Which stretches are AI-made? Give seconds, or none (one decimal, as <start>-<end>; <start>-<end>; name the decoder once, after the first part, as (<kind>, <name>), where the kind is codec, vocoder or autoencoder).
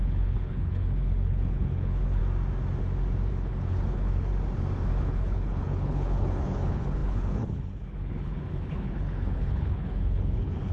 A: 0.0-2.2 (codec, HILCodec); 3.3-4.3; 4.9-10.7